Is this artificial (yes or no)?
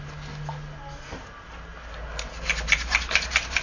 no